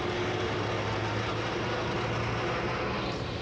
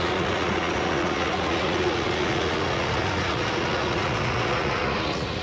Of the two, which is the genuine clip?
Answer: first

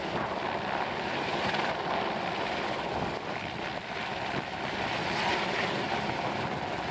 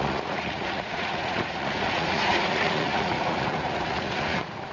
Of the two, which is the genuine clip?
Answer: first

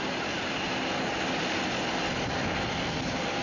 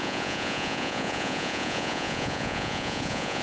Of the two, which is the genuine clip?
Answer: first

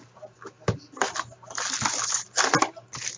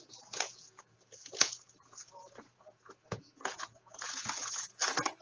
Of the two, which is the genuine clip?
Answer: first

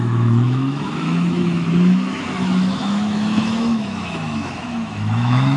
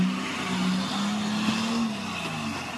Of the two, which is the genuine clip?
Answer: second